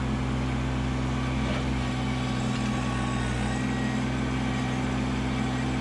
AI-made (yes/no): no